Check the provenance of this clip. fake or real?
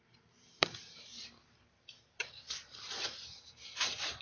fake